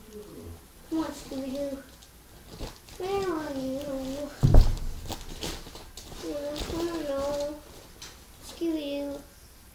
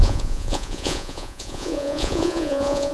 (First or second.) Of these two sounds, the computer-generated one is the second